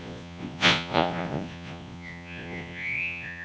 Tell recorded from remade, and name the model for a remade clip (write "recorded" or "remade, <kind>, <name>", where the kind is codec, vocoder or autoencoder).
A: remade, vocoder, Vocos